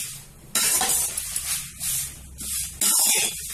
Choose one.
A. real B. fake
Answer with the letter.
A